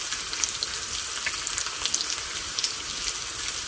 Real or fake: real